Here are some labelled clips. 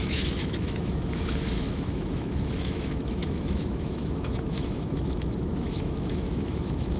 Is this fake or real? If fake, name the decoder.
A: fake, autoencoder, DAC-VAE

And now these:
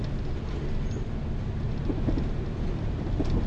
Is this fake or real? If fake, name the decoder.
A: real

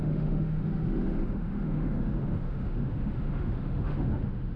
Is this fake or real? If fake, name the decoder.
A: fake, autoencoder, DAC-VAE